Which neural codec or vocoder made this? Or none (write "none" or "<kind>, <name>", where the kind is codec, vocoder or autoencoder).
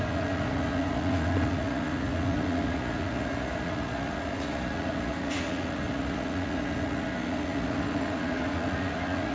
vocoder, Vocos